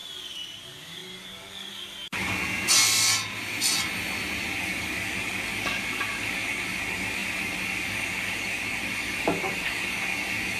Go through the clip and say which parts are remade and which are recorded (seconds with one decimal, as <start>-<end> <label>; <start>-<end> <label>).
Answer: 0.0-0.6 recorded; 0.6-2.4 remade; 2.4-4.6 recorded; 4.6-10.6 remade